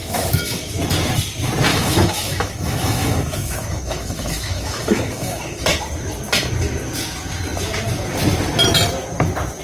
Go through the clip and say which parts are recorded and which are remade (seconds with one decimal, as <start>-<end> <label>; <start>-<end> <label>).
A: 0.0-0.7 remade; 0.7-1.7 recorded; 1.7-5.6 remade; 5.6-9.6 recorded